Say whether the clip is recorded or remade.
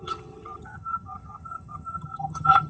remade